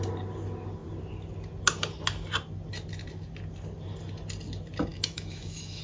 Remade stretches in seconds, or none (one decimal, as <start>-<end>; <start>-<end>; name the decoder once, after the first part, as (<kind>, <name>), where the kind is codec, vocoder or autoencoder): 4.9-5.8 (autoencoder, DAC-VAE)